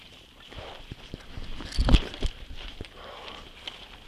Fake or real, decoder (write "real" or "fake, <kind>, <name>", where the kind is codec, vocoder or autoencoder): real